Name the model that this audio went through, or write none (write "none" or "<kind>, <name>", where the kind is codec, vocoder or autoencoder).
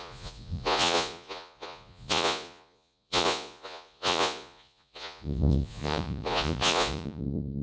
vocoder, Vocos